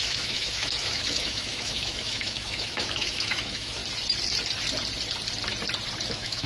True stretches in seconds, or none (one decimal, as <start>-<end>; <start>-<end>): 3.8-6.1